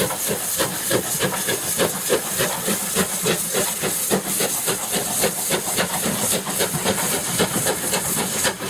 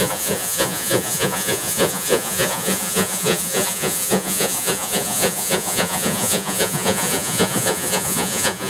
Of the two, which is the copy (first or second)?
second